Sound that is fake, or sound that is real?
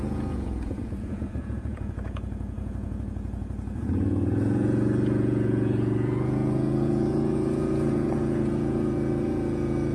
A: fake